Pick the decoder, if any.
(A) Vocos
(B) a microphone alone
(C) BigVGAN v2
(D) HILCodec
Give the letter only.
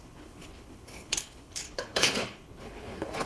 D